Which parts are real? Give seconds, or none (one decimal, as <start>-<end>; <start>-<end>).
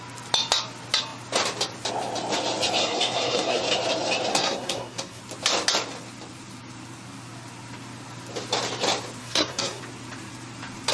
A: 0.0-2.8; 3.6-4.3; 5.2-9.2; 9.8-10.9